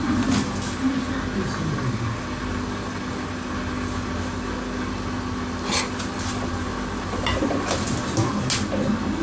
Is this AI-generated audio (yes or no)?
no